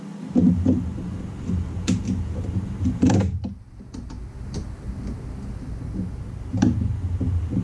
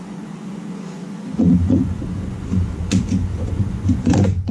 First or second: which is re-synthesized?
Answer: second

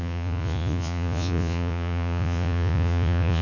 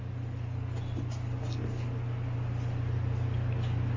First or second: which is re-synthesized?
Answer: first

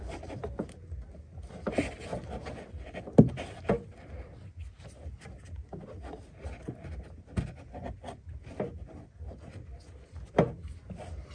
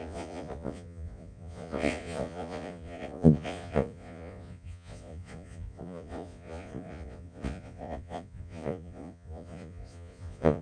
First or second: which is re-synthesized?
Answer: second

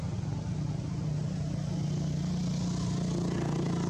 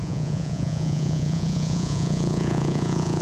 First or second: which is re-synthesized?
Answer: second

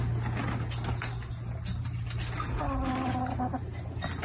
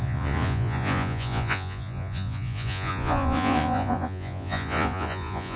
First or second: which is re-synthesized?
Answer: second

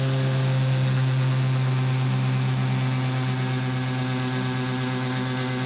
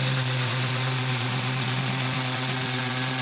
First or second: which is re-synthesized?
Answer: second